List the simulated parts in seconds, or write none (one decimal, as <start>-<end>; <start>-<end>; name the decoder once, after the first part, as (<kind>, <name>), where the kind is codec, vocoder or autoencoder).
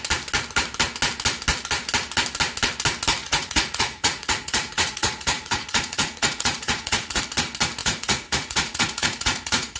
3.2-7.2 (vocoder, Vocos); 7.8-9.8